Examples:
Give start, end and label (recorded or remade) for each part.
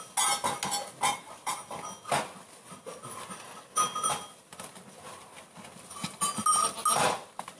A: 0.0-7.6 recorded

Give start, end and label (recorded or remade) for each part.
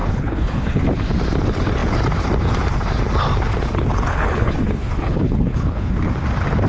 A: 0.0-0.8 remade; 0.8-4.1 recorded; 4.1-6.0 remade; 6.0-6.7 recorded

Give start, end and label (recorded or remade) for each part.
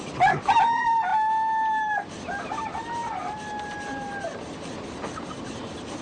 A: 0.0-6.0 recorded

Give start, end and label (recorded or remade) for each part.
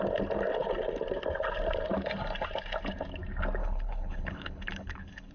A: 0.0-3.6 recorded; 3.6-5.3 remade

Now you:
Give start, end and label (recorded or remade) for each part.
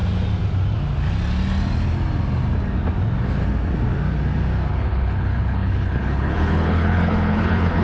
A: 0.0-4.7 recorded; 4.7-7.8 remade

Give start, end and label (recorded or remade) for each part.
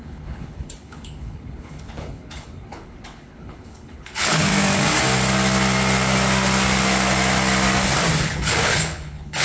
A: 0.0-4.5 remade; 4.5-8.2 recorded; 8.2-9.4 remade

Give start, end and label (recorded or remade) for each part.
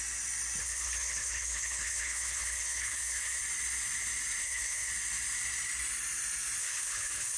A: 0.0-0.6 recorded; 0.6-3.4 remade; 3.4-4.4 recorded; 4.4-4.9 remade; 4.9-6.6 recorded; 6.6-7.4 remade